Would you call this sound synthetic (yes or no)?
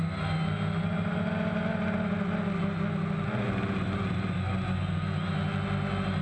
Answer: no